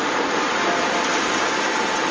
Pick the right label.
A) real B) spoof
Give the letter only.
A